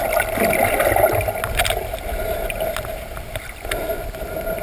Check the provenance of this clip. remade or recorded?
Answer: recorded